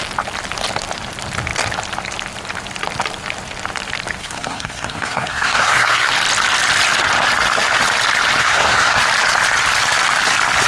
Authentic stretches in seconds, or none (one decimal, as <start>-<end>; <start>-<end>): 0.0-4.2; 6.1-8.4; 9.0-10.7